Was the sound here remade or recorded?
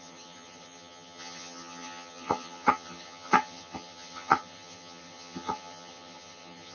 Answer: remade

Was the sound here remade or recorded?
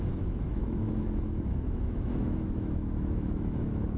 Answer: remade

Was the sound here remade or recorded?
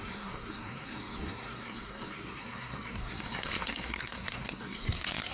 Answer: remade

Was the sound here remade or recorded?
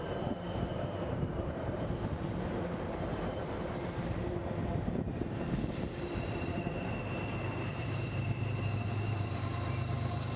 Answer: remade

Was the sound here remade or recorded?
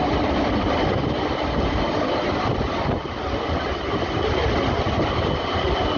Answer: recorded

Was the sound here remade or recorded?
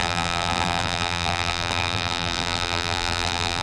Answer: remade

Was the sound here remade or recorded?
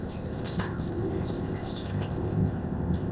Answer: remade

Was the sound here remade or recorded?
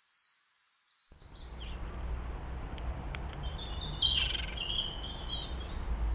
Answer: recorded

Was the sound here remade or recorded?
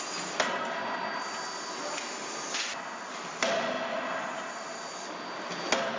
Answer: recorded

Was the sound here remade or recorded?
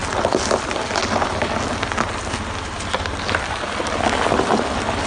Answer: recorded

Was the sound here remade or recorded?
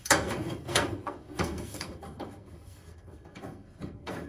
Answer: remade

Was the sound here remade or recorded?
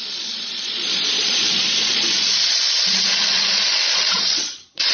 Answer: remade